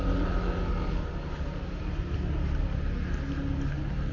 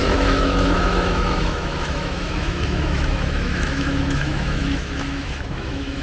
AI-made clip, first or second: second